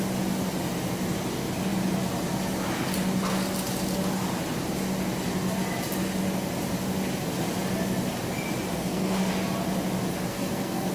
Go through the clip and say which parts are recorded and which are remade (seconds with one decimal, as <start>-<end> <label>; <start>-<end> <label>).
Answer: 0.0-8.7 recorded; 8.7-9.3 remade; 9.3-10.3 recorded; 10.3-10.9 remade